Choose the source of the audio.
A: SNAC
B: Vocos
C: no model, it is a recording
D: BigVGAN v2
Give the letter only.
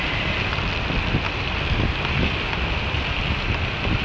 C